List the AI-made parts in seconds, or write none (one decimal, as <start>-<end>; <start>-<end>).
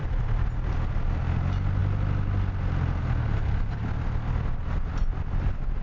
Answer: none